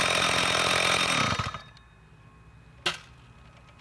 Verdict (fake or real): real